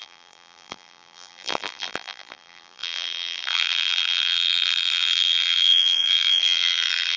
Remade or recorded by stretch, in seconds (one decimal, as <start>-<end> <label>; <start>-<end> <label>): 0.0-7.2 remade